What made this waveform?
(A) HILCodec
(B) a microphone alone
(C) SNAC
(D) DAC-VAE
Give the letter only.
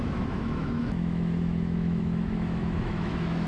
D